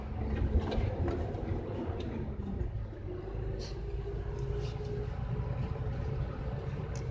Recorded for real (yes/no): yes